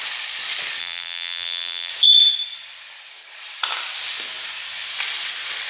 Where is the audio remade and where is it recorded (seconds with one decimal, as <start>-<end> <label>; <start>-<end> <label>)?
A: 0.0-0.8 recorded; 0.8-1.9 remade; 1.9-5.7 recorded